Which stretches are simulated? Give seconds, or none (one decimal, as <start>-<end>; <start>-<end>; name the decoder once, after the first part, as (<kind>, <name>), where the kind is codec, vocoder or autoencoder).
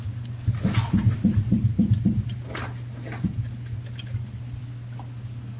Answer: 0.0-1.2 (codec, DAC); 4.6-5.6